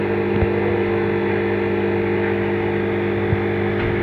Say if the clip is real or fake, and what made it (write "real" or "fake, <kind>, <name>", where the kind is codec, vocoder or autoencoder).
fake, vocoder, BigVGAN v2